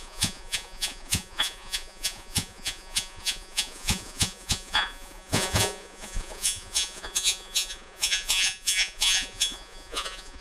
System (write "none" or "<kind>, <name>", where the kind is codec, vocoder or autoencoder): vocoder, Vocos